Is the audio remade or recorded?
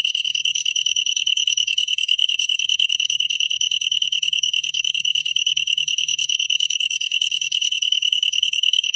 remade